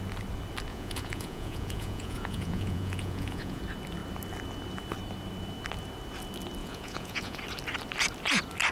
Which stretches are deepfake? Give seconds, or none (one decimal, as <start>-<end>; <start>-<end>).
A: 0.7-3.6; 6.6-7.4